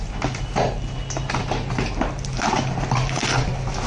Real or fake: real